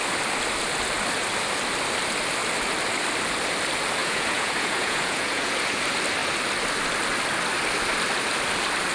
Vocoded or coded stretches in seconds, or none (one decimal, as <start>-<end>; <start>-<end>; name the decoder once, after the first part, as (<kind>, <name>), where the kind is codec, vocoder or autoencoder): 4.0-5.8 (vocoder, Vocos)

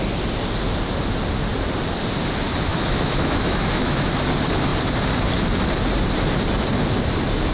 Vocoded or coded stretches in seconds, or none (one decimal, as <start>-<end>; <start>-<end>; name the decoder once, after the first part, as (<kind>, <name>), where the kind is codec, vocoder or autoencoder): 2.7-4.1 (autoencoder, DAC-VAE)

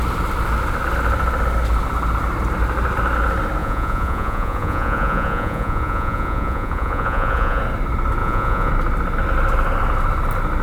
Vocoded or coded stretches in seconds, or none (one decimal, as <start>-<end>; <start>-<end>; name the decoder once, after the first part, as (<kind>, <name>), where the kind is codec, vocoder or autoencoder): 3.6-7.6 (vocoder, Vocos); 8.2-8.7

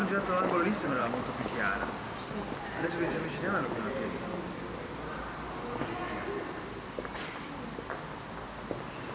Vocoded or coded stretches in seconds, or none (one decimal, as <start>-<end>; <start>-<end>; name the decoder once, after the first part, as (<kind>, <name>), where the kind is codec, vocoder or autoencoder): none

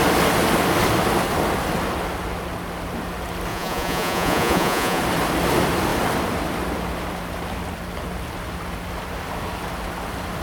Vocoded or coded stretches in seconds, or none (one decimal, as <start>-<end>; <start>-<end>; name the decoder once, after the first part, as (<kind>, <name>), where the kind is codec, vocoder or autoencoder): 3.5-5.0 (vocoder, Vocos)

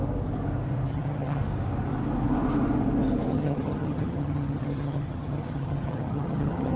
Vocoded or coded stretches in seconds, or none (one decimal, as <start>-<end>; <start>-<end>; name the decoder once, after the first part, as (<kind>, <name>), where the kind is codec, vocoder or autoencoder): 0.9-1.4 (vocoder, HiFi-GAN); 3.3-6.8

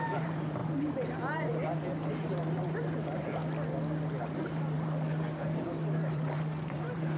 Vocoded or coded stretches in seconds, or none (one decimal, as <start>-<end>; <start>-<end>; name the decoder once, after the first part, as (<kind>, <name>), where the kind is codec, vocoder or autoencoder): 0.0-3.4 (vocoder, BigVGAN v2); 4.2-7.2

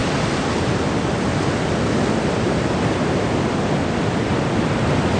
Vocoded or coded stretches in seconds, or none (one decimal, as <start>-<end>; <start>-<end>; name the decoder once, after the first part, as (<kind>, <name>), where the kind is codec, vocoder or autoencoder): none